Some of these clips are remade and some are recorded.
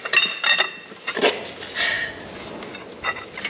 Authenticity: recorded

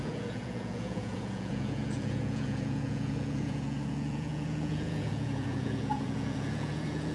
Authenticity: remade